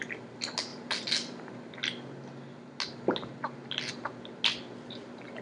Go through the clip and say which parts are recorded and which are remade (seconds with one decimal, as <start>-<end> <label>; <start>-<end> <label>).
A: 0.0-5.4 recorded